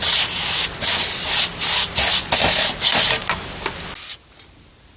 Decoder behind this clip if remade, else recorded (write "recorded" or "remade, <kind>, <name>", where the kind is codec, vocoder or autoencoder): recorded